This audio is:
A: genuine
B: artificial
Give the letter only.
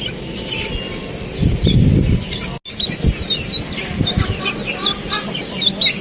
A